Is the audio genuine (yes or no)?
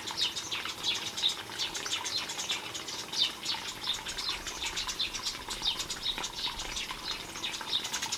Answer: yes